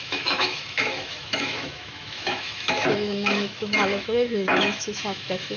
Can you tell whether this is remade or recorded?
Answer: remade